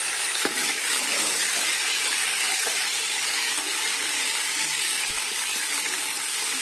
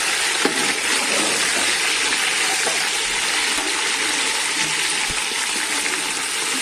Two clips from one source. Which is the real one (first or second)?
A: second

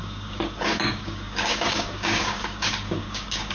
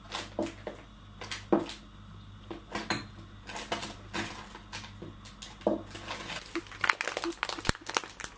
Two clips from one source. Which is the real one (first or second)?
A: second